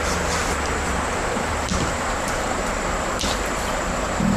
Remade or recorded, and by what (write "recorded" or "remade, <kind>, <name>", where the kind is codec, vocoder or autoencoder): remade, vocoder, BigVGAN v2